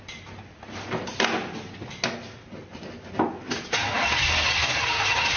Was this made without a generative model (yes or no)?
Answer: yes